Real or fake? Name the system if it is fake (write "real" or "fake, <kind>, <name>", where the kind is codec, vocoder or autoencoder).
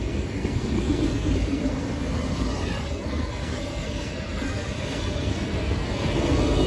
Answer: fake, codec, SNAC